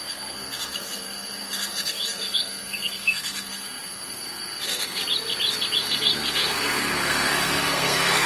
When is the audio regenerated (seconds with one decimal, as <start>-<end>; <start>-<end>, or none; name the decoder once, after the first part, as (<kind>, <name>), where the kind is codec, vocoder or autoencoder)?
0.0-5.0 (codec, SNAC); 5.8-8.3

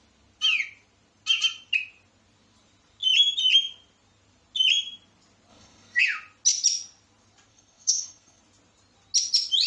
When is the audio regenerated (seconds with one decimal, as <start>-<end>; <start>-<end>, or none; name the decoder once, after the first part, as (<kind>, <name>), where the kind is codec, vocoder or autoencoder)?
5.5-6.0 (codec, SNAC); 7.5-8.4

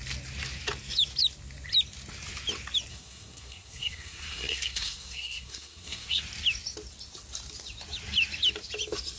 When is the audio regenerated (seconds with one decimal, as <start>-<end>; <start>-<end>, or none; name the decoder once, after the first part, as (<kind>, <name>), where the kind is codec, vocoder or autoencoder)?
2.9-6.2 (codec, SNAC)

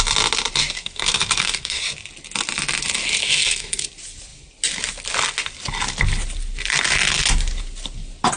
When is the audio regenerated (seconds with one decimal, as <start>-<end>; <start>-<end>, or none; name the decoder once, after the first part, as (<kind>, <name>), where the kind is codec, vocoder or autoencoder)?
0.7-1.8 (codec, SNAC); 3.2-3.8

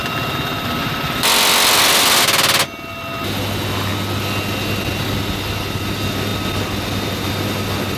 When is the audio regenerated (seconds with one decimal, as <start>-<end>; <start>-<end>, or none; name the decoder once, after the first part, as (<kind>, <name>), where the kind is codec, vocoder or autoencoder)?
none

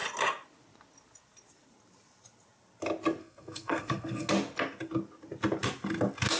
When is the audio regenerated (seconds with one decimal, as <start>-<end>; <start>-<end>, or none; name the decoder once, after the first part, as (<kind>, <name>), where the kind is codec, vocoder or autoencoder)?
3.2-4.3 (codec, SNAC)